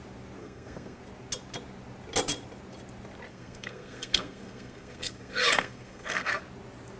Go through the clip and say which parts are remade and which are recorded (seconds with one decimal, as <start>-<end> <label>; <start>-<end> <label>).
0.0-0.4 recorded; 0.4-1.0 remade; 1.0-3.3 recorded; 3.3-6.4 remade; 6.4-7.0 recorded